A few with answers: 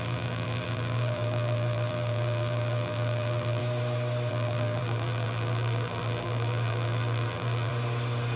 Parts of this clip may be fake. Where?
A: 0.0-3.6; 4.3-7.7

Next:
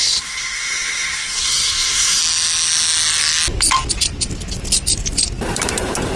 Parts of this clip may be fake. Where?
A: 0.0-2.2

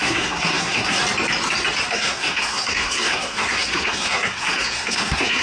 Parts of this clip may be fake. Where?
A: 0.0-1.0; 1.9-5.4

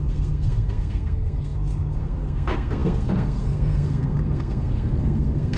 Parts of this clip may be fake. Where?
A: 0.0-5.6

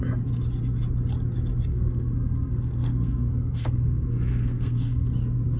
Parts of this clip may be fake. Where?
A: 1.7-5.1